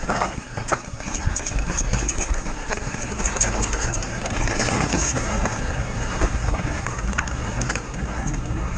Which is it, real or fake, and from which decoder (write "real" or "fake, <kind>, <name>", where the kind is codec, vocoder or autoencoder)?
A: fake, codec, SNAC